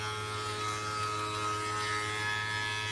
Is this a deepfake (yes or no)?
no